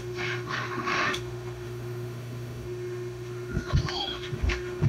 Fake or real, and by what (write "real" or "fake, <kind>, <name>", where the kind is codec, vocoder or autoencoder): fake, autoencoder, DAC-VAE